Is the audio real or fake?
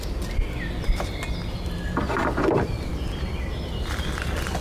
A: real